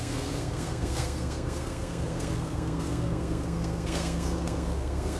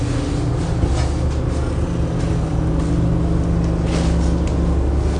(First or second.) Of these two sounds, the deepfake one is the first